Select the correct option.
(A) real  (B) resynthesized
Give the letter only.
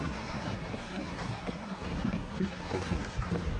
B